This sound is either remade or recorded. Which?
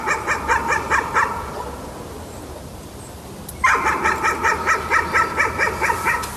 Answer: recorded